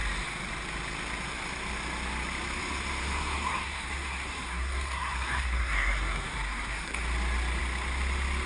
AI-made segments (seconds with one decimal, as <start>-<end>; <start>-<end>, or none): 3.0-7.0